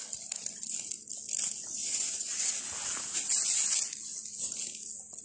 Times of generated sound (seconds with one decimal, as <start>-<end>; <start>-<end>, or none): 1.8-2.5

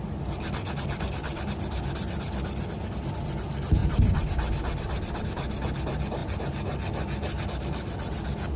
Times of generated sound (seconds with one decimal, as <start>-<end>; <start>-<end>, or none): none

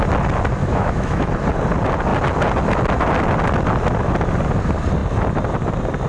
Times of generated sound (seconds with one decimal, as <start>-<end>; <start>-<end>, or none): 0.6-1.3